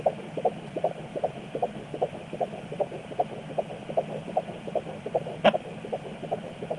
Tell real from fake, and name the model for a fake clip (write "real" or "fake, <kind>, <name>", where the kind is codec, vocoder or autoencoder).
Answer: real